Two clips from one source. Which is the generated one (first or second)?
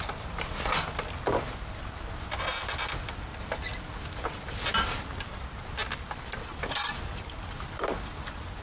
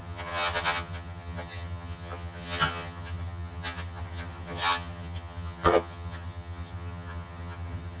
second